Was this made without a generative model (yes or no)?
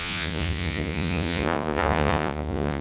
no